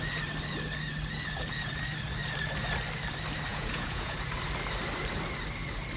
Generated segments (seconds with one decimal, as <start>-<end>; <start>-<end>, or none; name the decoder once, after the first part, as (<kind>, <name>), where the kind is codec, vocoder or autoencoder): 3.5-4.3 (vocoder, Vocos)